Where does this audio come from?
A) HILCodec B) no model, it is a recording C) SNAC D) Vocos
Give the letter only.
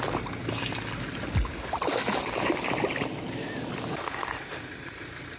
B